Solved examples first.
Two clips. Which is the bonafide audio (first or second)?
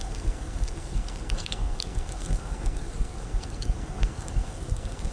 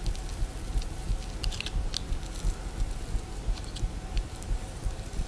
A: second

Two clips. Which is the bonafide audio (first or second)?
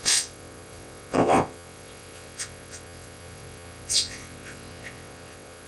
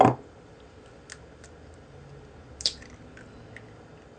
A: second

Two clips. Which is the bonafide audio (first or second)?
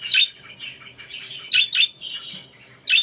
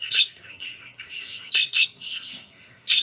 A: first